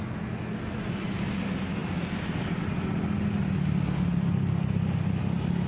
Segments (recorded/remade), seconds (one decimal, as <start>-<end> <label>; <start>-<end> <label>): 0.0-5.7 recorded